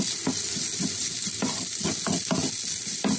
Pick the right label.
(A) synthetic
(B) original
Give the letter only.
B